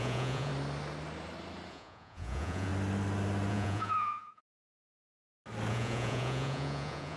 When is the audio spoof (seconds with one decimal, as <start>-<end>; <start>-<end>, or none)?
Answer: 0.0-0.5; 1.7-2.7; 3.5-4.9; 5.7-7.2